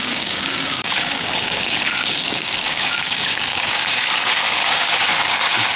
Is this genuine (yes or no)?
no